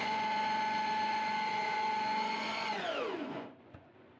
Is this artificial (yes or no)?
yes